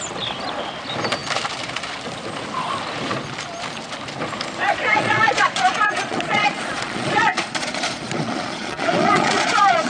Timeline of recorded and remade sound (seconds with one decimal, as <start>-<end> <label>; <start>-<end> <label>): 0.0-4.9 recorded; 4.9-9.9 remade